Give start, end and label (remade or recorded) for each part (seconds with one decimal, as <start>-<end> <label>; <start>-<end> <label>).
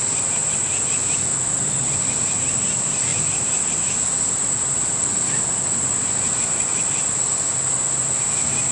0.0-8.7 recorded